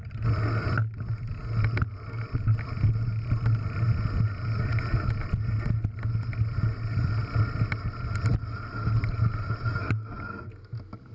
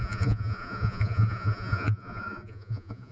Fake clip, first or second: second